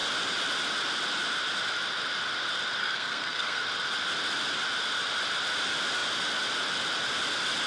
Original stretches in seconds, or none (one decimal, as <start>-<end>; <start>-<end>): 0.0-2.8; 3.6-7.7